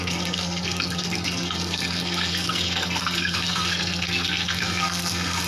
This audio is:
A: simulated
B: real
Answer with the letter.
A